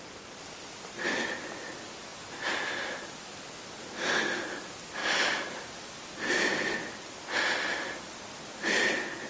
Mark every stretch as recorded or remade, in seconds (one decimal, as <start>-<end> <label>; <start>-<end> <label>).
0.0-5.0 recorded; 5.0-5.9 remade; 5.9-9.3 recorded